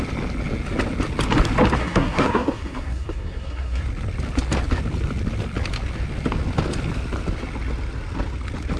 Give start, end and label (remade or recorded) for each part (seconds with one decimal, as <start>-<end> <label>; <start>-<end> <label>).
0.0-1.8 recorded; 1.8-3.8 remade; 3.8-8.8 recorded